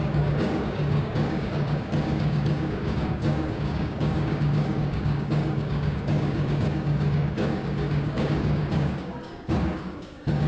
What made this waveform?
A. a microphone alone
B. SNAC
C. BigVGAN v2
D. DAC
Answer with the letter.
D